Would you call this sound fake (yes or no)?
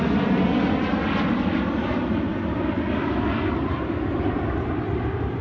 no